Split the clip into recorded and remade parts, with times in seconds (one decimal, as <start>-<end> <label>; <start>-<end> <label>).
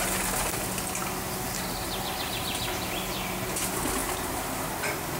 0.0-1.0 recorded; 1.0-3.1 remade; 3.1-4.0 recorded; 4.0-5.2 remade